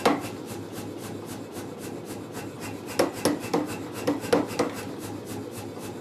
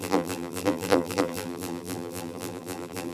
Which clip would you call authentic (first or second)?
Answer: first